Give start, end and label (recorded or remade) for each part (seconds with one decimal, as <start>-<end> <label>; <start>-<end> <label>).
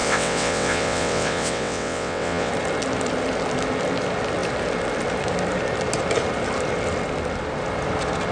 0.0-2.5 remade; 2.5-8.3 recorded